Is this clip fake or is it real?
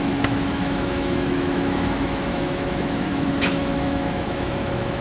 fake